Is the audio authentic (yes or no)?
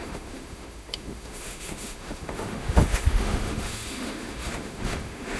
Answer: no